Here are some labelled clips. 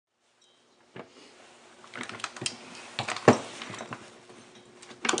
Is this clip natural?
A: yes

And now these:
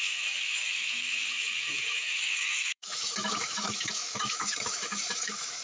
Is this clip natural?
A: no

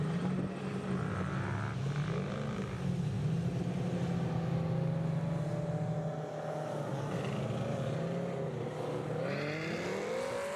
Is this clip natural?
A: yes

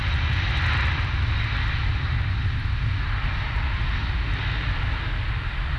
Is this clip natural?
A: yes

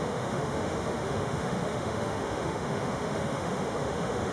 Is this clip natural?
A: no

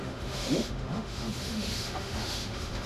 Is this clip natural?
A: no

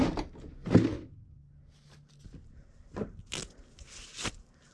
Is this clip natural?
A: yes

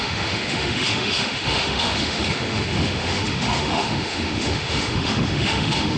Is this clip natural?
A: no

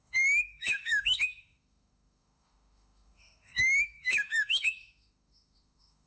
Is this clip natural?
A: no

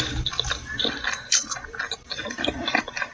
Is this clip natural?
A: yes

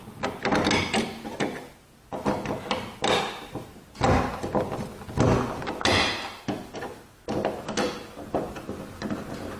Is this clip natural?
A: yes